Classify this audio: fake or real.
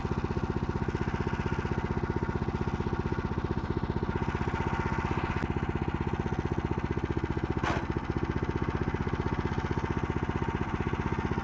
real